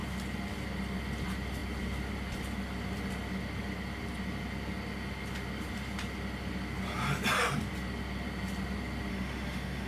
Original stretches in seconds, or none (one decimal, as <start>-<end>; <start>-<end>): 0.0-9.1